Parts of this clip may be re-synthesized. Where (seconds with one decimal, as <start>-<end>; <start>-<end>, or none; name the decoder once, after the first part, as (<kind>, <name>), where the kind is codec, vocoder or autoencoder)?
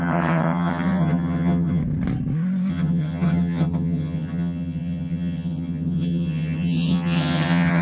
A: 0.0-1.8 (vocoder, HiFi-GAN); 2.7-7.8